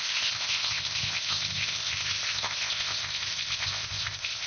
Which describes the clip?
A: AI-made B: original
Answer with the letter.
A